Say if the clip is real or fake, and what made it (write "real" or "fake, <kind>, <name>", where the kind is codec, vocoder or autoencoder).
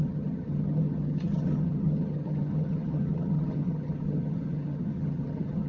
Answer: fake, vocoder, HiFi-GAN